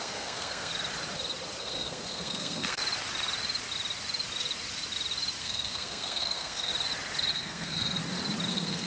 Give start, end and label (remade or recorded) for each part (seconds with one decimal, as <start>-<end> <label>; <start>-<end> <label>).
0.0-0.7 remade; 0.7-1.6 recorded; 1.6-2.8 remade; 2.8-5.4 recorded; 5.4-6.7 remade; 6.7-7.3 recorded; 7.3-8.0 remade; 8.0-8.5 recorded; 8.5-8.9 remade